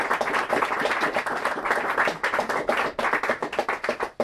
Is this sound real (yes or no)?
yes